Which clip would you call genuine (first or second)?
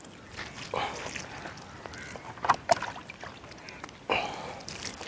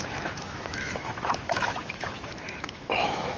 first